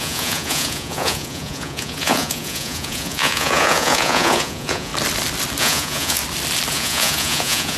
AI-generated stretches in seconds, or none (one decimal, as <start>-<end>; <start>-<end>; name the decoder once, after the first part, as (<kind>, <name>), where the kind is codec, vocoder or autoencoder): 0.0-4.9 (vocoder, Vocos); 5.6-6.2; 6.7-7.8